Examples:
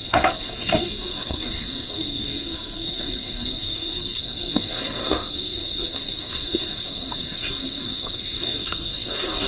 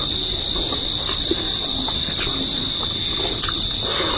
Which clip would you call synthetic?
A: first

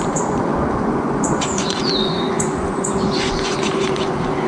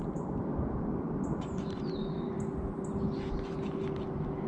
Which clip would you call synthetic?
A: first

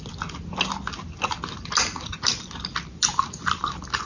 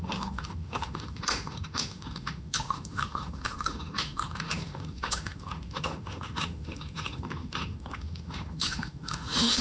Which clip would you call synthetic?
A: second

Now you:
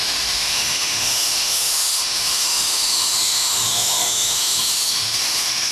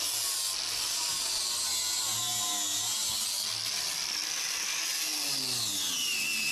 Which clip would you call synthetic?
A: first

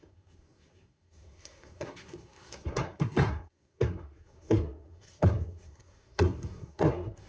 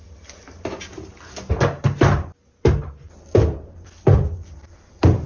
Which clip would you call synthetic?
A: first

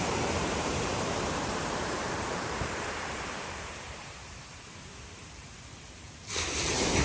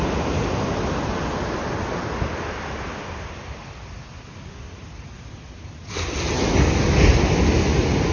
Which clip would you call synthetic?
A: first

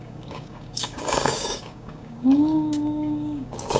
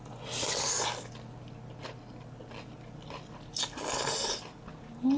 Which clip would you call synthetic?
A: first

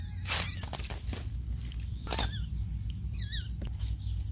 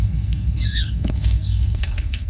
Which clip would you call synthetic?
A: second